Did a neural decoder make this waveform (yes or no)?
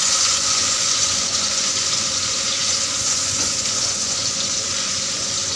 yes